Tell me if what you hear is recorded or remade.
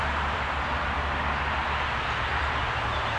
recorded